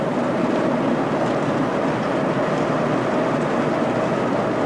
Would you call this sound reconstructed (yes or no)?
no